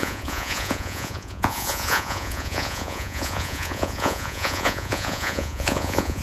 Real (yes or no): no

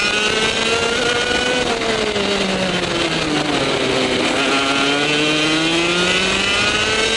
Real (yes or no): yes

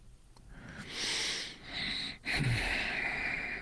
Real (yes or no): yes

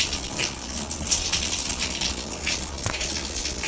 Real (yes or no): no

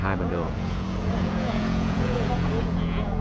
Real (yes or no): no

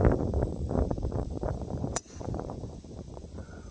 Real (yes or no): no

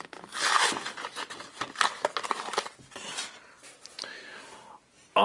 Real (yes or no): yes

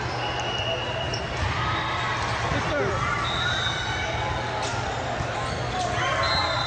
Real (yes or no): yes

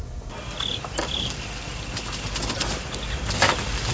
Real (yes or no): yes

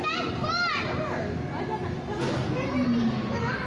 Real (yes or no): yes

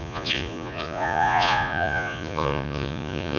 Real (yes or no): no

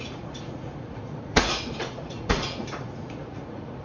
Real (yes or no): no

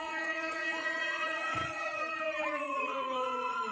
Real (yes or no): no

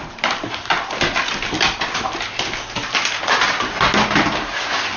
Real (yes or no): yes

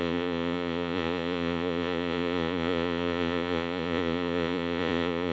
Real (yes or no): no